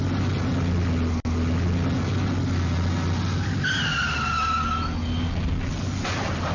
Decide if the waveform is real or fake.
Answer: real